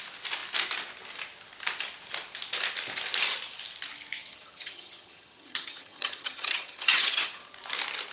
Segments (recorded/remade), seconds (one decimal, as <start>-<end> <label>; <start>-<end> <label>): 0.0-4.2 recorded; 4.2-7.4 remade; 7.4-8.1 recorded